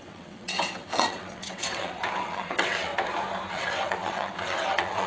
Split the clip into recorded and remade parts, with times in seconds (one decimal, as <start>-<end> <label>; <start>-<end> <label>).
0.0-2.9 remade; 2.9-3.5 recorded; 3.5-5.1 remade